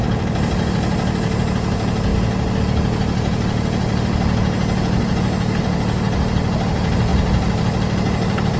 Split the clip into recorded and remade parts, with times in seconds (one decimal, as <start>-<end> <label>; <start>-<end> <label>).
0.0-7.1 recorded; 7.1-8.6 remade